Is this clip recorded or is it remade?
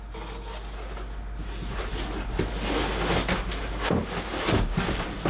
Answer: recorded